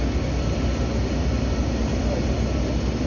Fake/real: real